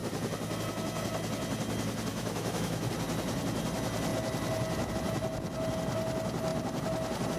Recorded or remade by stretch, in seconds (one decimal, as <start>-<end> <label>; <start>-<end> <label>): 0.0-2.1 recorded; 2.1-2.9 remade; 2.9-7.4 recorded